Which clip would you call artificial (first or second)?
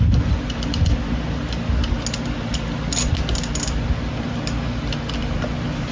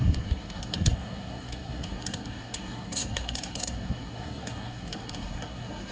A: second